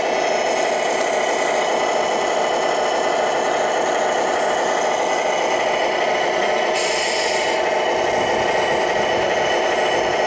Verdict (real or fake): real